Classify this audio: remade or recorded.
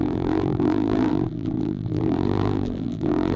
remade